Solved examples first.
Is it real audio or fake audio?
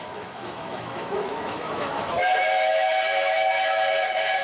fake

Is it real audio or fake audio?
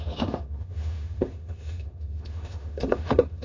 fake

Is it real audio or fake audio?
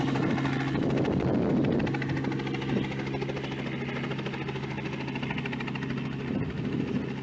real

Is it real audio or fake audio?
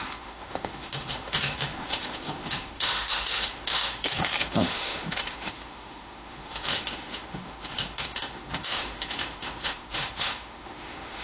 fake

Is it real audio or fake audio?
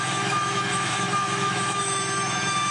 fake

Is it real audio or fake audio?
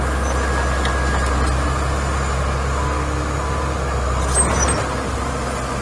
real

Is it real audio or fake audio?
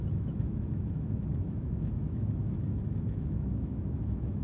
fake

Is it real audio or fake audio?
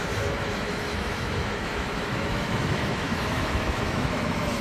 fake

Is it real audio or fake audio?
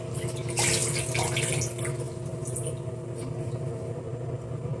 real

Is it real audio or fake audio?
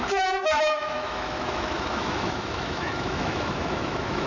fake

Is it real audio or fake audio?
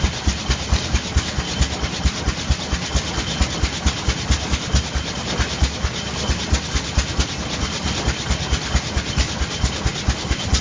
real